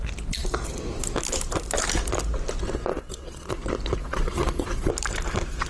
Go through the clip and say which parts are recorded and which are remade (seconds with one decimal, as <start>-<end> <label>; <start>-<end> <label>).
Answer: 0.0-2.9 recorded; 2.9-3.6 remade; 3.6-4.0 recorded; 4.0-4.9 remade; 4.9-5.7 recorded